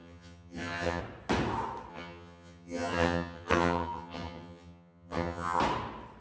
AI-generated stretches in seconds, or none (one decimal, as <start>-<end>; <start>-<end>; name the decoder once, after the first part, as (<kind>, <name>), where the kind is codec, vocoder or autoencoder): 0.0-1.0 (vocoder, HiFi-GAN); 1.9-5.6